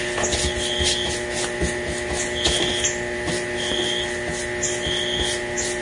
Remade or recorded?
recorded